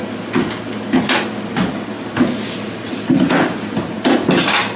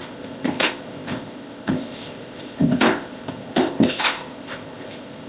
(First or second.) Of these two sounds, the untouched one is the first